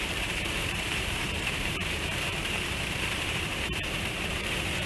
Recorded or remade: remade